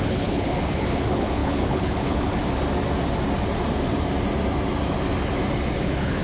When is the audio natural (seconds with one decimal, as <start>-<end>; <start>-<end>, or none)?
2.4-5.8